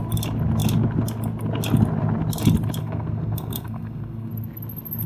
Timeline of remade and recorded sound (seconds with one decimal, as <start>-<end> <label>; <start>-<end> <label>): 0.0-2.8 recorded; 2.8-4.3 remade; 4.3-5.1 recorded